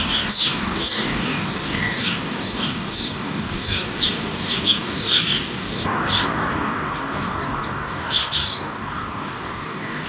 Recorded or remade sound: remade